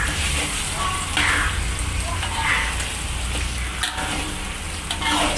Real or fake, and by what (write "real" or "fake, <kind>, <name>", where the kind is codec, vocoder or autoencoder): real